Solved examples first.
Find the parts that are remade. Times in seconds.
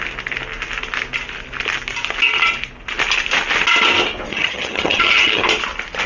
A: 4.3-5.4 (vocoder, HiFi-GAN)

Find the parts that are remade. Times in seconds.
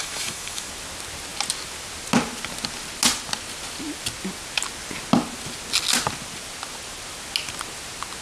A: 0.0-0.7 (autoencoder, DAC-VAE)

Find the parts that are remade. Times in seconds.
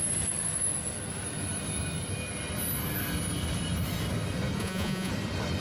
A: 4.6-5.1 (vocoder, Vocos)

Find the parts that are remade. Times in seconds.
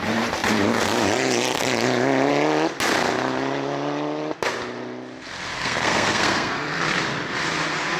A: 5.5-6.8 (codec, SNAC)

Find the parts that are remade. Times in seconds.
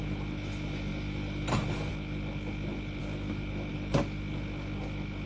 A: none